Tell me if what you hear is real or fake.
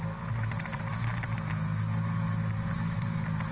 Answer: real